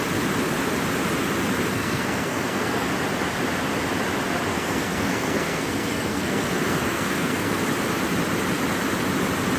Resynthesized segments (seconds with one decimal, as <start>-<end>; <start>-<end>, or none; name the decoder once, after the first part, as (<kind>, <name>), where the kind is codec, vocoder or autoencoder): 1.7-2.9 (codec, SNAC); 4.5-7.6